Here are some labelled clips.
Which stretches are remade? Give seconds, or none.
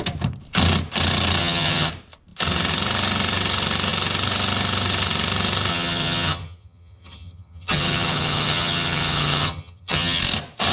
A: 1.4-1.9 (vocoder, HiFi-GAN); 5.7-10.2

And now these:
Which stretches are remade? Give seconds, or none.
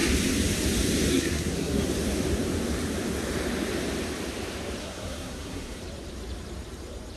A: 1.1-1.9 (codec, SNAC); 4.8-5.8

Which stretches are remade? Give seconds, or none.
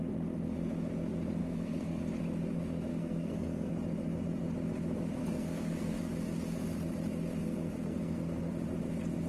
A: 1.4-2.0 (codec, SNAC); 2.9-3.7; 5.2-6.0; 7.4-8.5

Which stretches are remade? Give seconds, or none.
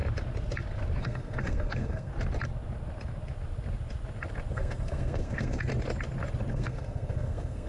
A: 1.0-2.1 (codec, SNAC); 4.5-5.7; 6.5-7.7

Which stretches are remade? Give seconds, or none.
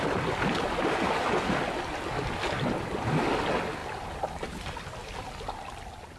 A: none